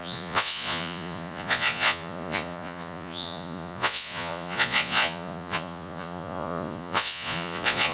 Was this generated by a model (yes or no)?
yes